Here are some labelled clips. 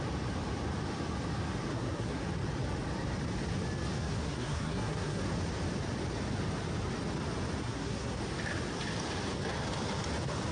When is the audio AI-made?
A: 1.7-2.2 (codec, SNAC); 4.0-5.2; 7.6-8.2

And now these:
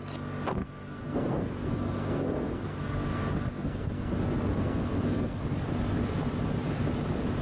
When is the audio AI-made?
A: 0.6-4.1 (codec, SNAC); 4.5-5.4

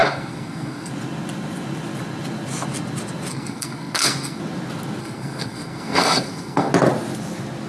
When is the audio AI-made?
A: 0.0-0.9 (codec, SNAC); 3.3-4.4; 5.0-6.7

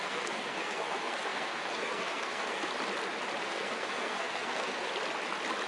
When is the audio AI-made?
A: 0.0-2.7 (codec, SNAC); 3.4-4.9

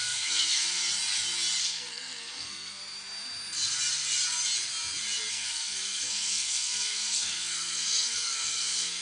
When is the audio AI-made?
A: 0.0-0.8 (codec, SNAC); 1.6-2.8; 5.3-9.0